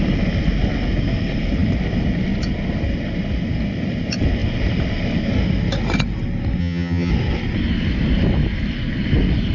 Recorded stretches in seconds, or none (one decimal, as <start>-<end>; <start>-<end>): 0.0-6.6; 7.1-9.5